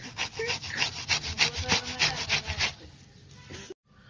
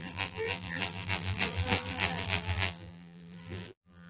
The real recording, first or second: first